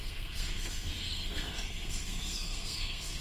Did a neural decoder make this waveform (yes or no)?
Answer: yes